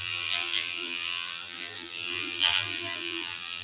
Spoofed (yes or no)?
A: yes